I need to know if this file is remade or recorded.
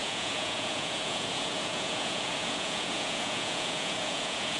remade